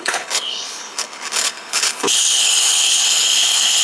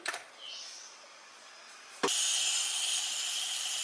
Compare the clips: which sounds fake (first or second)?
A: first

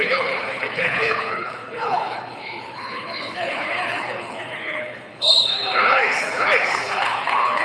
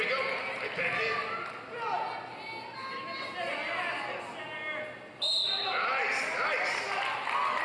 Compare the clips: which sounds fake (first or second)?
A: first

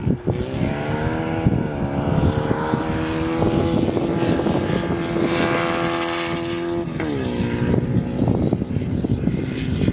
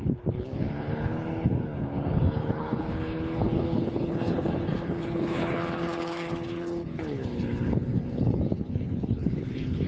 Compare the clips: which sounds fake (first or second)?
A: second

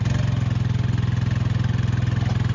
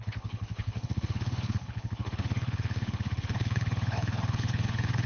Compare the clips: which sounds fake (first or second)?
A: second